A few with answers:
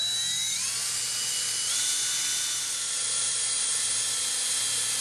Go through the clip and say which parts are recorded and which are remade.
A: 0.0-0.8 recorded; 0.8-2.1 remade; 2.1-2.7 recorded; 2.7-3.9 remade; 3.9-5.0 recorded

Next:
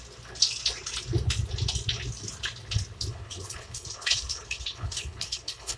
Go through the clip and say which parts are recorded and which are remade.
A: 0.0-3.1 recorded; 3.1-5.8 remade